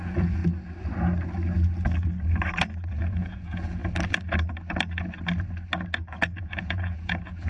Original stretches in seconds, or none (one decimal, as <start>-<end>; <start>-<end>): 0.4-2.9; 3.8-6.4